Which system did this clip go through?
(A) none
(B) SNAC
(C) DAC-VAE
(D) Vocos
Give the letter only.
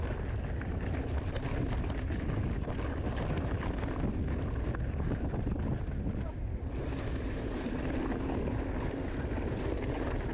A